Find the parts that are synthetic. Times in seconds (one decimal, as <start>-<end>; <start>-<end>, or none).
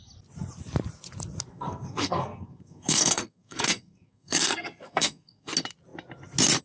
1.5-5.5